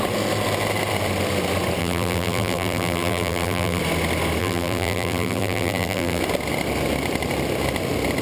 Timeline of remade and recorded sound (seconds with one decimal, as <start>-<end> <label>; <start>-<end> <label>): 0.0-1.8 recorded; 1.8-3.8 remade; 3.8-4.4 recorded; 4.4-6.2 remade; 6.2-8.2 recorded